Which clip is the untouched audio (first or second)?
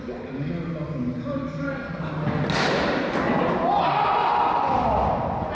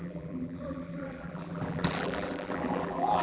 first